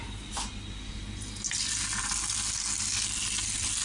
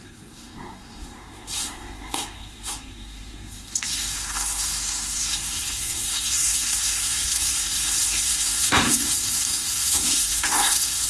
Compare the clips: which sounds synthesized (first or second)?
second